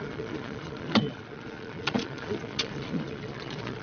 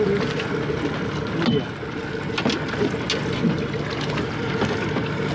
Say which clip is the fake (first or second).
first